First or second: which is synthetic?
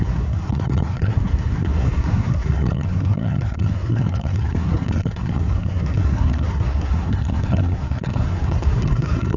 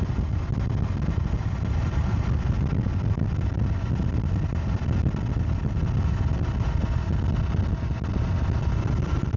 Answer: first